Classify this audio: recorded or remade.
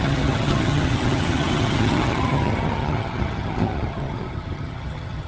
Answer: remade